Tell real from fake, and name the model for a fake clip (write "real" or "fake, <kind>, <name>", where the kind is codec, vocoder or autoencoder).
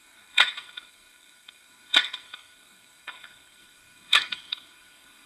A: fake, codec, SNAC